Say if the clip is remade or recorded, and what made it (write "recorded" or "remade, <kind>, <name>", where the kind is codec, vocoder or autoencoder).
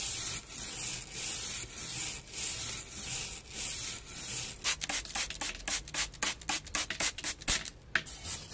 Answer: recorded